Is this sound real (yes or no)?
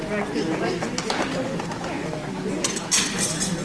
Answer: yes